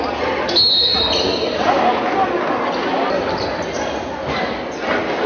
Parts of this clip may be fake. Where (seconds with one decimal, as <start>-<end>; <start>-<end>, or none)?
none